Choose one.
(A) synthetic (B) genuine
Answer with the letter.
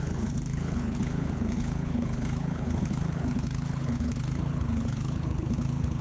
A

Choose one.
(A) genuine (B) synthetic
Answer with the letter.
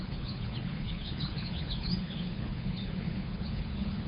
B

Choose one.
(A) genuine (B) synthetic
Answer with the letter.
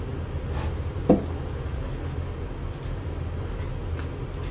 A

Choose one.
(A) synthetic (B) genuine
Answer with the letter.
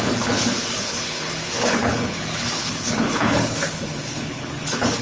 A